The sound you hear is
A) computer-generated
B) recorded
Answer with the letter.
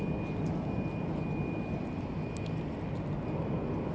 B